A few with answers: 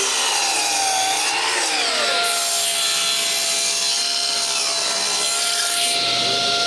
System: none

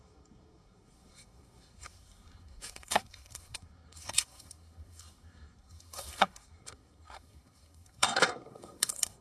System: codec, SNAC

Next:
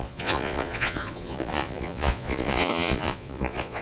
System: vocoder, Vocos